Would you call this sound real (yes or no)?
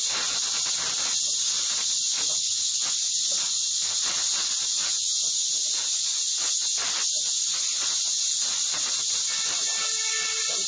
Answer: yes